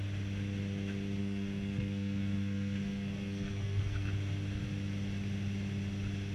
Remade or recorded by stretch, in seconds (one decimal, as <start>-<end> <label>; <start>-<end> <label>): 0.0-1.2 recorded; 1.2-4.1 remade; 4.1-6.3 recorded